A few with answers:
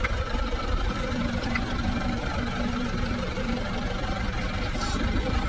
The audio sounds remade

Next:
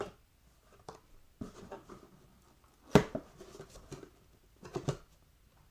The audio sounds recorded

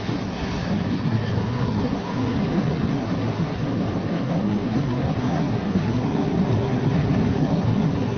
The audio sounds remade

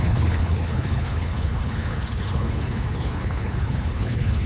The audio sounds remade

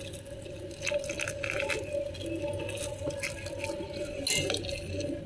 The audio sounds recorded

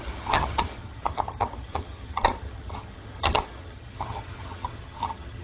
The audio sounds remade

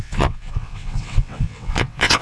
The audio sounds remade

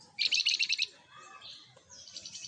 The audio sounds recorded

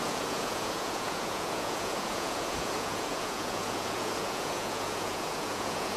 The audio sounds remade